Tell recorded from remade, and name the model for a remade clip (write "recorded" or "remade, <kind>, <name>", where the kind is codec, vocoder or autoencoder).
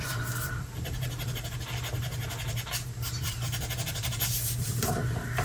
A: remade, vocoder, BigVGAN v2